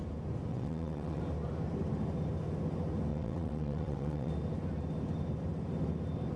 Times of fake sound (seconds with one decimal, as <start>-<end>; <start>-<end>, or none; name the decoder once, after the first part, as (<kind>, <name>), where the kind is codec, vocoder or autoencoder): 0.5-1.2 (vocoder, WaveNeXt); 3.1-4.3

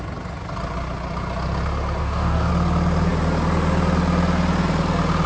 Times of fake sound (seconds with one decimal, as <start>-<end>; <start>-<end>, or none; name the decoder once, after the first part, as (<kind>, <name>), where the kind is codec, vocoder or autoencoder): 2.0-2.5 (codec, DAC)

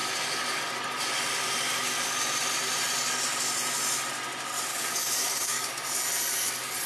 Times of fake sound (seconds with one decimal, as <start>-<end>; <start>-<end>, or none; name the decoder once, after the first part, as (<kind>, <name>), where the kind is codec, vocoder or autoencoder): 4.7-5.7 (codec, DAC)

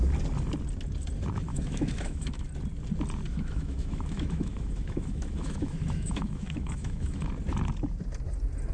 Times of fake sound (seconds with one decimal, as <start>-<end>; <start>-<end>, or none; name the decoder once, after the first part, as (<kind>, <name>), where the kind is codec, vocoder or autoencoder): 1.5-2.4 (autoencoder, DAC-VAE); 3.3-7.3

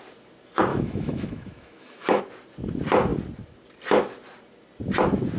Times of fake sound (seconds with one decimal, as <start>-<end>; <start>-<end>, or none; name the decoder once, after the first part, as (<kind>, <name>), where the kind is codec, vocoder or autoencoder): 0.7-2.2 (autoencoder, DAC-VAE)

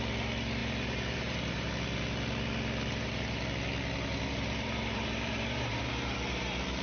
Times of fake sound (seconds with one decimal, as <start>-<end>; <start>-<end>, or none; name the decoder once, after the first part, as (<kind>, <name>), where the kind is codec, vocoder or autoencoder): 0.6-1.7 (vocoder, BigVGAN v2); 2.9-3.4; 4.1-5.8

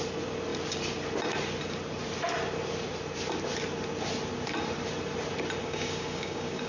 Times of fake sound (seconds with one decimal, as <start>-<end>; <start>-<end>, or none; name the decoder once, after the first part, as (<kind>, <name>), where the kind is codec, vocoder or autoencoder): 5.6-6.7 (codec, DAC)

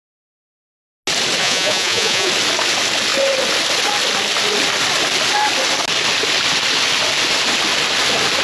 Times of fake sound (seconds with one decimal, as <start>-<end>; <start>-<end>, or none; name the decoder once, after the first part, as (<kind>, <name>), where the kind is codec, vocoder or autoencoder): 1.4-2.3 (vocoder, Vocos)